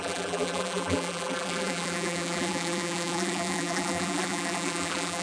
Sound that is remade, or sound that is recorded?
remade